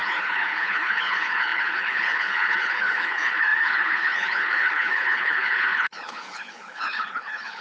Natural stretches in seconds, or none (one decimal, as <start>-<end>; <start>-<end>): none